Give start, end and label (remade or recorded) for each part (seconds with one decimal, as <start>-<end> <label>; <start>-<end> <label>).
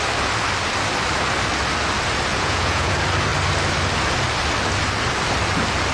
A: 0.0-2.3 recorded; 2.3-2.9 remade; 2.9-5.9 recorded